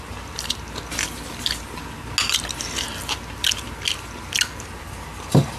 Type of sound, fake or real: real